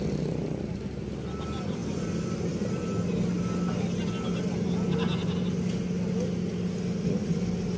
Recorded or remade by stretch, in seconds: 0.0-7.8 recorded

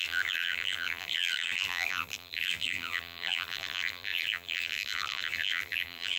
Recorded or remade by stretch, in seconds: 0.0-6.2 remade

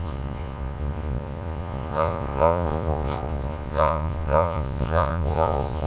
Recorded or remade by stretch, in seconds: 0.0-5.9 remade

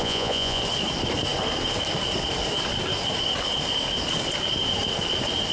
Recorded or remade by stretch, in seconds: 0.0-0.6 remade; 0.6-5.5 recorded